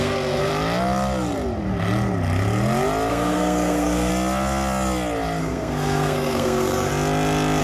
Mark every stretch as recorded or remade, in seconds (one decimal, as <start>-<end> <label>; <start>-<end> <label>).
0.0-0.5 remade; 0.5-3.1 recorded; 3.1-4.1 remade; 4.1-5.4 recorded; 5.4-6.9 remade; 6.9-7.6 recorded